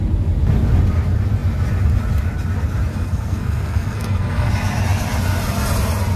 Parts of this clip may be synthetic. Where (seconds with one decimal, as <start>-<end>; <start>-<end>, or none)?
2.9-4.5